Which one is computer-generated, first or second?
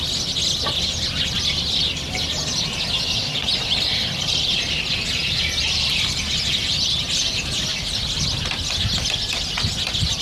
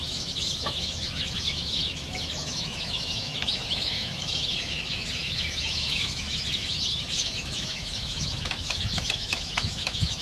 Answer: second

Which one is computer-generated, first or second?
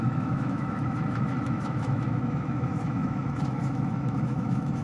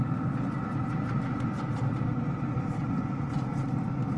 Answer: first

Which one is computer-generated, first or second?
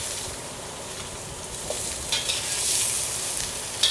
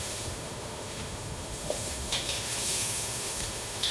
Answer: second